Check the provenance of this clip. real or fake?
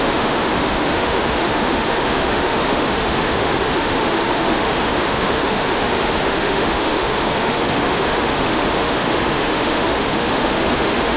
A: fake